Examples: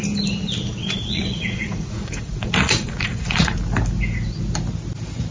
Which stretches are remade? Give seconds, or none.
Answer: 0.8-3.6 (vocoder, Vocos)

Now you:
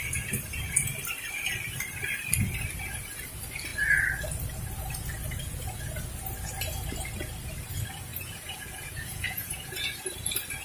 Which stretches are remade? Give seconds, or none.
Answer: 8.1-9.9 (vocoder, Vocos)